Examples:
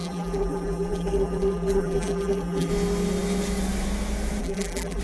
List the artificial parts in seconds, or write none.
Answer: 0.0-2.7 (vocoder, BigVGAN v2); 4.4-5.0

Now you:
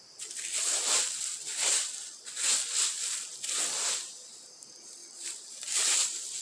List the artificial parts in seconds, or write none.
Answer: 5.0-6.4 (vocoder, BigVGAN v2)

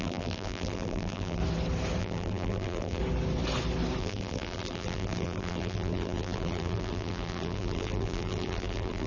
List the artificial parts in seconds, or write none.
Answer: 0.0-1.4 (vocoder, BigVGAN v2); 2.0-3.0; 4.0-9.1

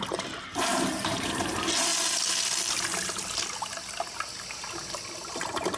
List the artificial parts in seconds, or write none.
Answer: 0.0-1.9 (vocoder, BigVGAN v2); 5.3-5.8

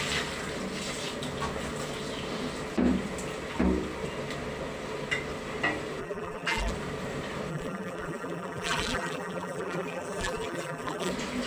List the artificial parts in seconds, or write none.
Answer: 6.0-6.7 (vocoder, BigVGAN v2); 7.5-11.1

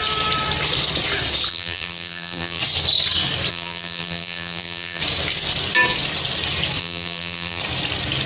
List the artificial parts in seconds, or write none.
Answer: 1.5-2.6 (vocoder, BigVGAN v2); 3.5-5.0; 6.8-7.6

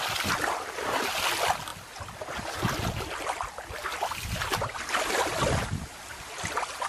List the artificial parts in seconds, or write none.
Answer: none

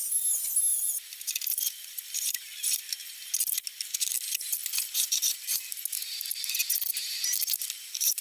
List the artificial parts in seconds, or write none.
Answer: 0.7-2.8 (vocoder, BigVGAN v2)